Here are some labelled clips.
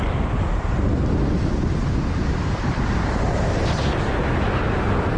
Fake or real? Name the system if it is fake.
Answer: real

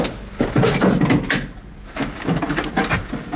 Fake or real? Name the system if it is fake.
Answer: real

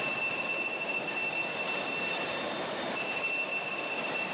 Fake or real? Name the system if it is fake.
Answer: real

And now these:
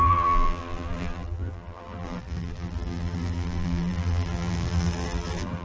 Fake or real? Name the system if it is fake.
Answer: fake, vocoder, BigVGAN v2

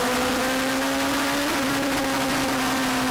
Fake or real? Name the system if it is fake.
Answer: real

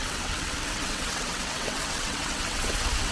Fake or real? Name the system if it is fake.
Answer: fake, vocoder, WaveNeXt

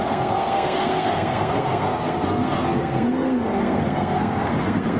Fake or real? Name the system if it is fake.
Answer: fake, codec, SNAC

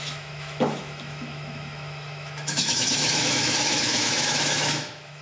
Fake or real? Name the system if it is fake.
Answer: fake, autoencoder, DAC-VAE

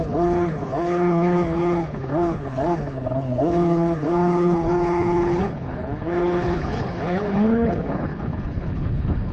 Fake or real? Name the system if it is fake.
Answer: fake, codec, HILCodec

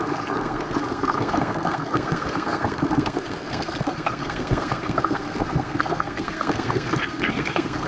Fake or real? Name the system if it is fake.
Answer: fake, codec, SNAC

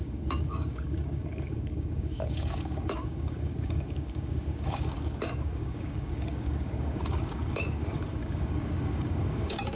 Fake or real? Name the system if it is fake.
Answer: fake, codec, DAC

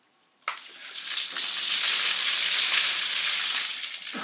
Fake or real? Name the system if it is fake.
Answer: real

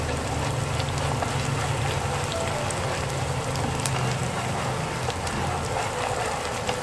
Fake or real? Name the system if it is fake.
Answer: real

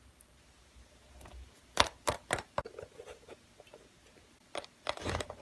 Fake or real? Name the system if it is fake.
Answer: fake, vocoder, BigVGAN v2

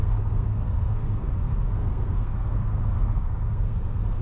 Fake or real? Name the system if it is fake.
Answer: fake, codec, SNAC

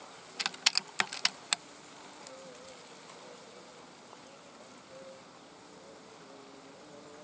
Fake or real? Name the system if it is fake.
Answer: real